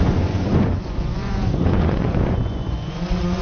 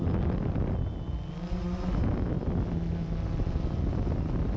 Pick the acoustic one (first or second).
second